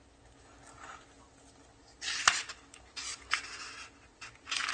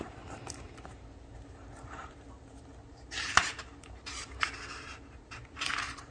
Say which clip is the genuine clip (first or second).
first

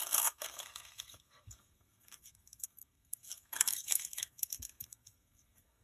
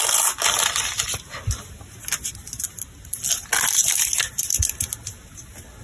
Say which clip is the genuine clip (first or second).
second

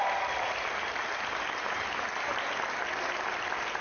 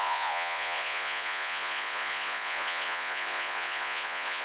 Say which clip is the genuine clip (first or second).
first